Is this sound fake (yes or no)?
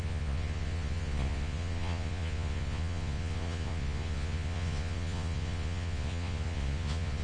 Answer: yes